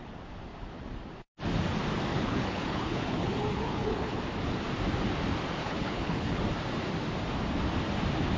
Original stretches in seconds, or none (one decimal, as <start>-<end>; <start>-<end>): 0.0-2.1; 4.2-5.6; 6.4-8.4